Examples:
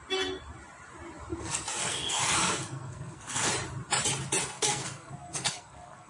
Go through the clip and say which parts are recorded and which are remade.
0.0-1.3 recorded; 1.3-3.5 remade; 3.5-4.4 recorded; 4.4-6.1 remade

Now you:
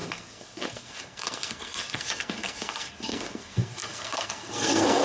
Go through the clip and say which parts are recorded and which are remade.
0.0-5.0 remade